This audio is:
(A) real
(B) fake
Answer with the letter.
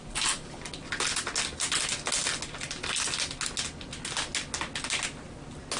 A